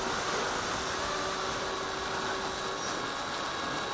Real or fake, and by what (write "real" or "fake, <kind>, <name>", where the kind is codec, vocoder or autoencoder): real